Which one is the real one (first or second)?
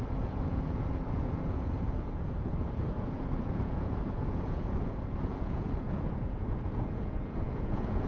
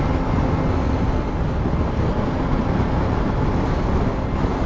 second